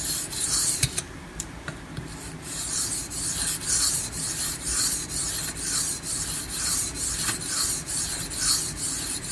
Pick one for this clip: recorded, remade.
remade